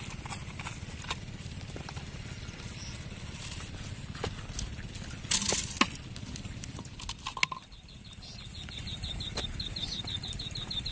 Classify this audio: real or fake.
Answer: real